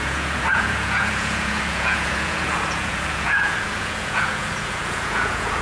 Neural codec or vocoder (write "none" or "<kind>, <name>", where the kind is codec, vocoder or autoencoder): vocoder, Vocos